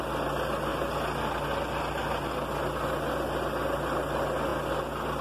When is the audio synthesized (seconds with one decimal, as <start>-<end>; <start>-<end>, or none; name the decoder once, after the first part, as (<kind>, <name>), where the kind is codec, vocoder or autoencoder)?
none